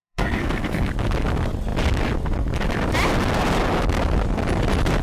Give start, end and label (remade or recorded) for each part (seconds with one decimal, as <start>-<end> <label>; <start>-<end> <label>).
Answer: 0.0-0.9 remade; 0.9-5.0 recorded